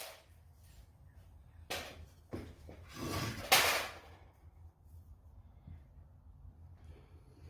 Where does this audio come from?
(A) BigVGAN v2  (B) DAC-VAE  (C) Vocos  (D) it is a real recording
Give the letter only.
D